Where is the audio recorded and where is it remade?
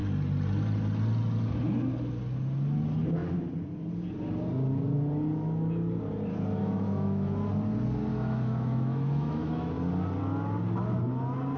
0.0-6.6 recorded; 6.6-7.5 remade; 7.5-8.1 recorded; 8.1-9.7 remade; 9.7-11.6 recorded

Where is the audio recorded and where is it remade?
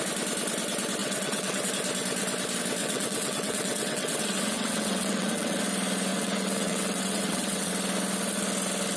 0.0-1.0 recorded; 1.0-1.7 remade; 1.7-2.8 recorded; 2.8-5.6 remade; 5.6-6.1 recorded; 6.1-7.7 remade; 7.7-9.0 recorded